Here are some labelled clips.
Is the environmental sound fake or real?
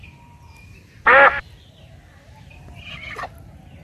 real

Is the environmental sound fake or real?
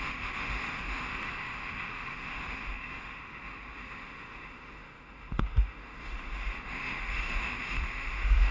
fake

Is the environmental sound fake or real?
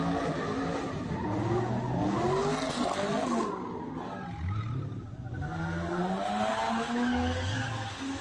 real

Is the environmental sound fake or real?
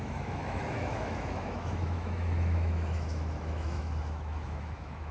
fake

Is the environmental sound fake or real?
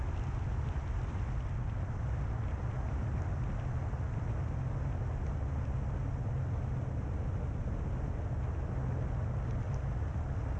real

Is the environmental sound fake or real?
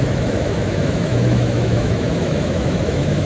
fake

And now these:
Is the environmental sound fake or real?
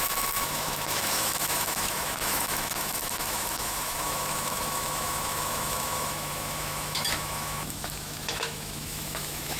fake